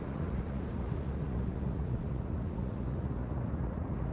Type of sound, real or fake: fake